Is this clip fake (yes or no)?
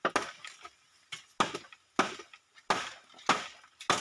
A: no